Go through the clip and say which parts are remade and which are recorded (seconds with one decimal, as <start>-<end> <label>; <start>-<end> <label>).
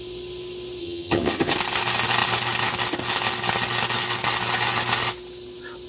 0.0-0.8 recorded; 0.8-1.5 remade; 1.5-5.9 recorded